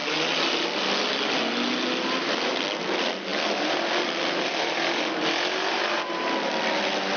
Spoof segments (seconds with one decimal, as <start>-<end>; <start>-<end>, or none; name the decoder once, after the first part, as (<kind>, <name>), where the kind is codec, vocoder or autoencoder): none